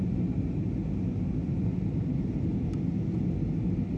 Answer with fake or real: real